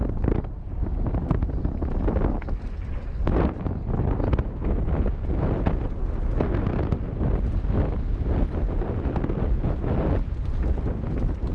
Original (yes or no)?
yes